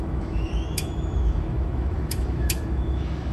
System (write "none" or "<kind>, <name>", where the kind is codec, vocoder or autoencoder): autoencoder, DAC-VAE